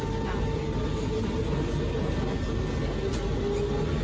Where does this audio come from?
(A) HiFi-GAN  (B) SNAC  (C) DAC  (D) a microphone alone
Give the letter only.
D